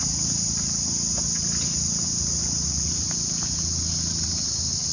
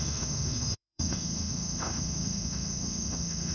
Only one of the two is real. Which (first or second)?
first